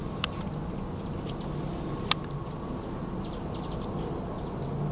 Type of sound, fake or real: real